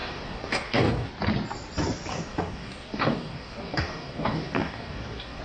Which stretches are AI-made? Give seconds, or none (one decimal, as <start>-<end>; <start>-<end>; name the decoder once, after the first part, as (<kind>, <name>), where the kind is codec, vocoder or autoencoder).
0.0-1.1 (codec, DAC); 2.1-5.4